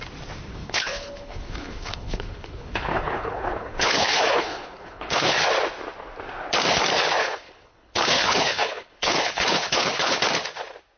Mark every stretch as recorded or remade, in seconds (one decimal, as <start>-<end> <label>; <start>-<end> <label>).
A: 0.0-0.5 recorded; 0.5-5.3 remade; 5.3-7.2 recorded; 7.2-10.2 remade; 10.2-11.0 recorded